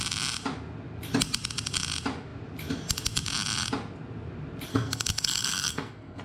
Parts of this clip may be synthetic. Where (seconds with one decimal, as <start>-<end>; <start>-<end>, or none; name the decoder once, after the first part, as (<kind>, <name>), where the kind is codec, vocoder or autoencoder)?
4.7-6.2 (codec, SNAC)